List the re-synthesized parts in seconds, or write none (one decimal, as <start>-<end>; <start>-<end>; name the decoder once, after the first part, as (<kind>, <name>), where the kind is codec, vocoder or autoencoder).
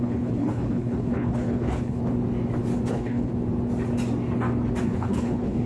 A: 0.0-2.0 (codec, HILCodec); 2.9-3.3; 4.8-5.7